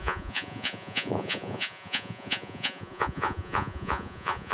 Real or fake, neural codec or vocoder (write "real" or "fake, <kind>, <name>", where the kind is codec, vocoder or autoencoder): fake, vocoder, Vocos